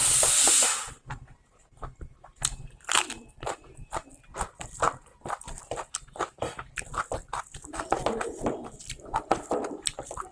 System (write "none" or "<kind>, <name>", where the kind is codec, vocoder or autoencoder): vocoder, BigVGAN v2